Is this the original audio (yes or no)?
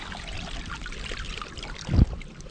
yes